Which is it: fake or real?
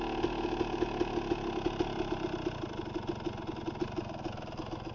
real